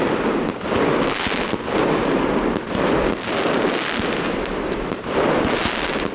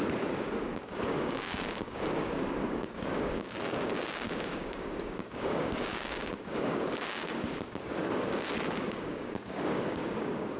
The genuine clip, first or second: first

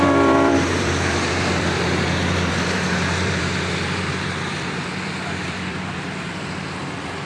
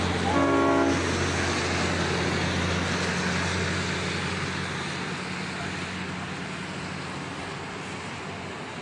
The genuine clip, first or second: second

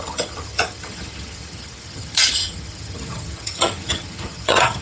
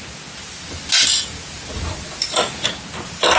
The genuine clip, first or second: second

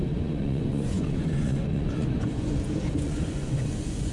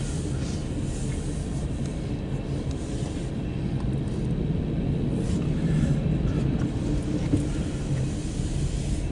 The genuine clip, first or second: second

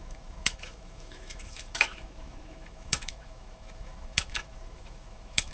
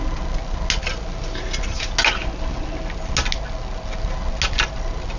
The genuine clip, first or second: second